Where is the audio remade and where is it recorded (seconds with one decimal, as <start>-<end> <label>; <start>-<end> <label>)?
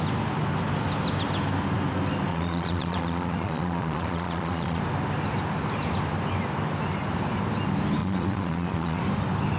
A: 0.0-2.3 recorded; 2.3-4.8 remade; 4.8-8.0 recorded; 8.0-9.0 remade; 9.0-9.6 recorded